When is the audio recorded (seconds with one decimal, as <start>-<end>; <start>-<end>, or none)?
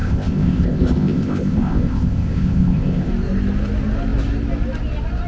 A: 3.1-5.3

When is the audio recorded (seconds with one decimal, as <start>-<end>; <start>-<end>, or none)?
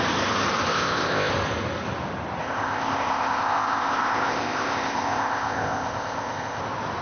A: 0.0-0.7; 1.3-2.4; 6.6-7.0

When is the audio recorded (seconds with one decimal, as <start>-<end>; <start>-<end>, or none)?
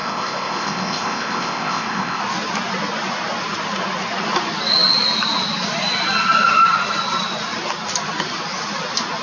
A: 2.2-9.2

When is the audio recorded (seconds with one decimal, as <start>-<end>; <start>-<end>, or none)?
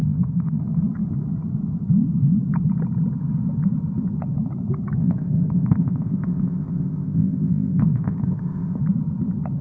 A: 0.6-5.0; 8.8-9.6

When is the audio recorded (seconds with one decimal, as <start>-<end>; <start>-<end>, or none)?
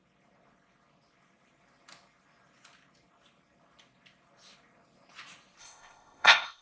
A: 0.0-5.6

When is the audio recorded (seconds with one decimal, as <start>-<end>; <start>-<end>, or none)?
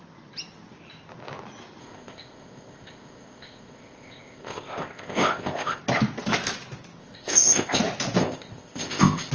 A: 0.0-1.8; 5.8-7.0; 7.8-8.2